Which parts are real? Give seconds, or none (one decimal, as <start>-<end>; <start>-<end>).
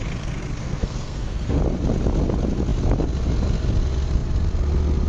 0.0-0.6; 1.6-5.1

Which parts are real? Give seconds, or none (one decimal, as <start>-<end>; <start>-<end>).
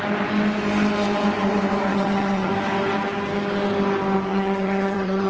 0.0-1.9; 2.5-4.3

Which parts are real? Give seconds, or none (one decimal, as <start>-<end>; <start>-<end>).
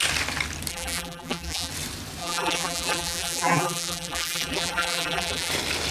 0.0-0.7; 1.7-2.2; 5.5-5.9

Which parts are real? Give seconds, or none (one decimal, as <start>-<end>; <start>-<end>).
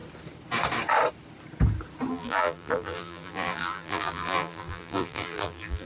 0.0-2.1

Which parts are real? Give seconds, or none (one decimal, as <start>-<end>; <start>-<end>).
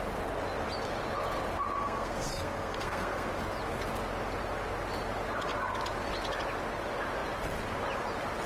0.0-1.8; 3.3-8.5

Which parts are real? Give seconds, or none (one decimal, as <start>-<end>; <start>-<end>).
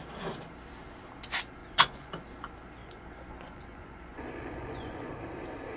0.0-1.6; 2.1-2.8; 5.1-5.8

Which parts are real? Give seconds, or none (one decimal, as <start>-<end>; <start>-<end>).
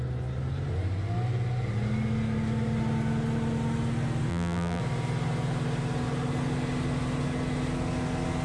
0.0-4.3; 4.8-8.4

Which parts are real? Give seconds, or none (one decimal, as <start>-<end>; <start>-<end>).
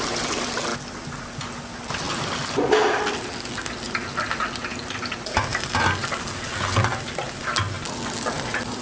0.0-8.8